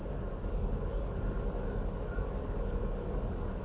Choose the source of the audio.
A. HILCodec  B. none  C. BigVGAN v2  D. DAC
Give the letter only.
D